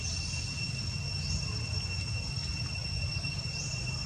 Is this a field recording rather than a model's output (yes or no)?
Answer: yes